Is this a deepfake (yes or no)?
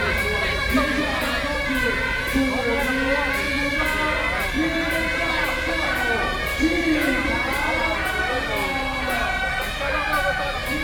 no